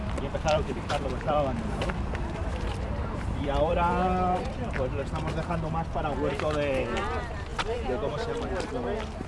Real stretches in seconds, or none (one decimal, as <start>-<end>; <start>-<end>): 4.7-7.5; 8.5-9.3